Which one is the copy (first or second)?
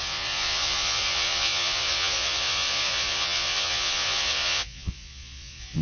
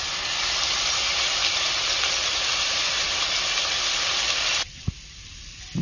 first